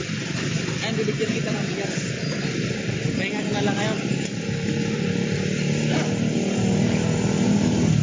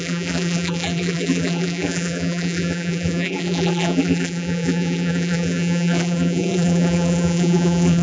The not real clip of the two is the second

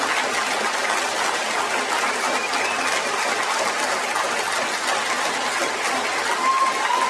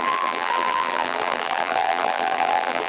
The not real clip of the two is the second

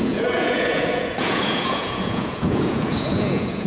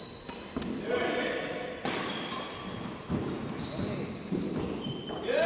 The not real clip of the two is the first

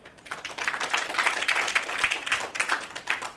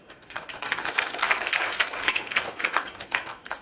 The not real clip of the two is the second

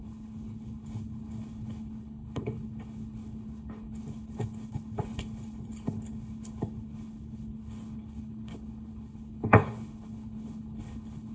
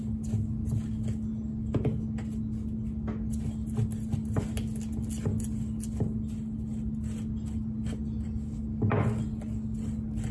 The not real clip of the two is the first